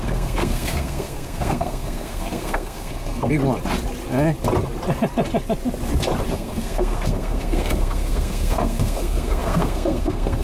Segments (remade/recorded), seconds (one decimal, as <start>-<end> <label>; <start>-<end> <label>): 0.0-3.3 remade; 3.3-6.3 recorded; 6.3-10.4 remade